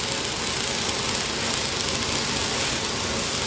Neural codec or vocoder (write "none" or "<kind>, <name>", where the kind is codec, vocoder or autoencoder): none